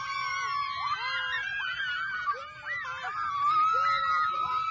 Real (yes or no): yes